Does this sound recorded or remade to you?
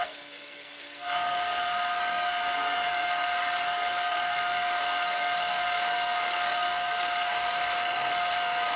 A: remade